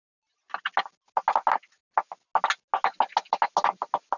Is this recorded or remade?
recorded